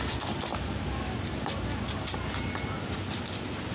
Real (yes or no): yes